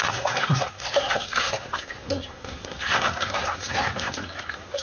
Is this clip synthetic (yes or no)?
yes